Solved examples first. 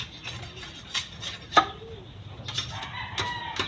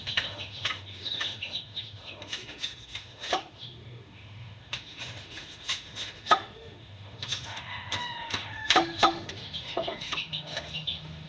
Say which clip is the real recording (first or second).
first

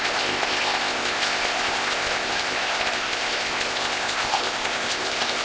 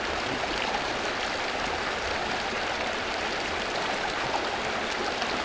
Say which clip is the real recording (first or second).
second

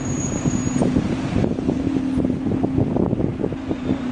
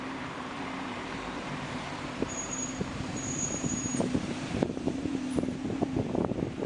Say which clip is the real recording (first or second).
first